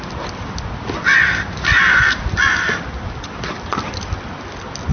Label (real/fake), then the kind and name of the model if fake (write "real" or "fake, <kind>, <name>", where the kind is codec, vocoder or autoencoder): real